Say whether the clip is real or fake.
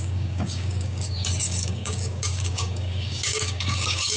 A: fake